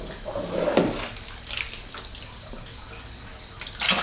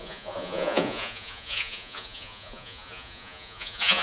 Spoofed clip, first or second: second